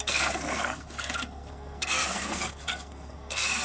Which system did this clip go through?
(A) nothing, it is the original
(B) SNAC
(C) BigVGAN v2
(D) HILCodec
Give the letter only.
B